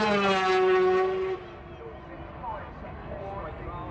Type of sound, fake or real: real